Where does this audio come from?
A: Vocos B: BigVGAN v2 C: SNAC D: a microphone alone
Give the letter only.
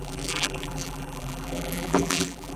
B